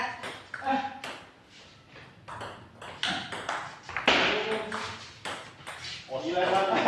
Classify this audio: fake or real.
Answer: real